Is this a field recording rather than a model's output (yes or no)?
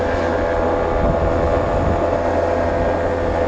yes